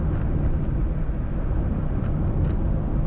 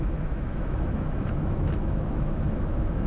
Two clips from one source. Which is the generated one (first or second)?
second